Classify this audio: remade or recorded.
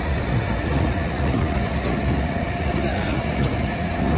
remade